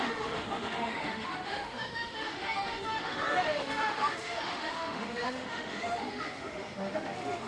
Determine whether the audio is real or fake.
fake